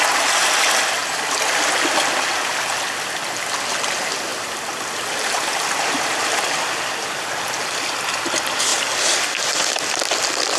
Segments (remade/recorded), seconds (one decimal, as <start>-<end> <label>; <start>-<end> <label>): 0.0-10.6 recorded